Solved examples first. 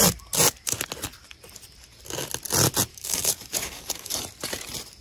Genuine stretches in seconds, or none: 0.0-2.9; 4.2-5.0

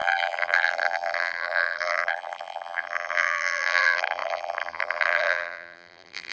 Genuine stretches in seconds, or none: none

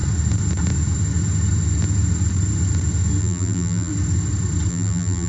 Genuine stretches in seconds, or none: 0.0-3.2; 3.9-4.7

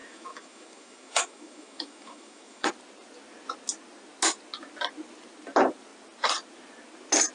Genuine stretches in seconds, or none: 2.7-7.3